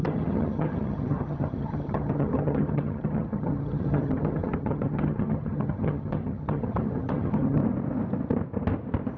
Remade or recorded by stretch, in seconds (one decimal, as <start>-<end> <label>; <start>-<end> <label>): 0.0-7.6 remade; 7.6-9.2 recorded